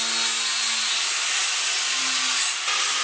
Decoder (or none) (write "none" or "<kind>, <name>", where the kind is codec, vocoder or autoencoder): none